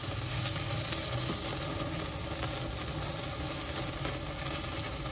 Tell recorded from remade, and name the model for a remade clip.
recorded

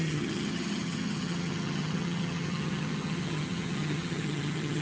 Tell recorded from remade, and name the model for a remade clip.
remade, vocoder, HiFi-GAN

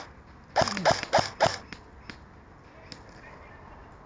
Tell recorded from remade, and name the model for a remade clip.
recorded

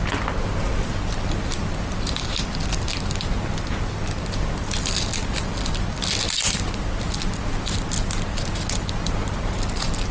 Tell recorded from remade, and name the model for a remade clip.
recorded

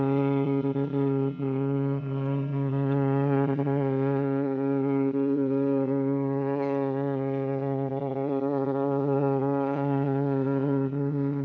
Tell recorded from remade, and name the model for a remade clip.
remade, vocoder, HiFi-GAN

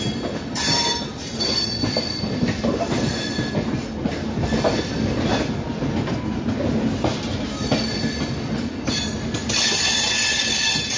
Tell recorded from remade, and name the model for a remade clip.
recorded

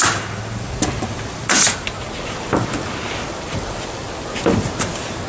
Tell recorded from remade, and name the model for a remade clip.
recorded